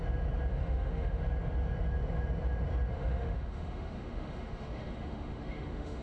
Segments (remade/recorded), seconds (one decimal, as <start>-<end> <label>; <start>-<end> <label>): 0.0-0.5 recorded; 0.5-1.2 remade; 1.2-2.9 recorded; 2.9-6.0 remade